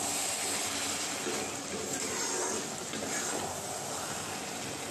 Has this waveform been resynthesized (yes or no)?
no